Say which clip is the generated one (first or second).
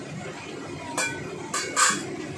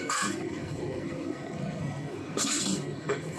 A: second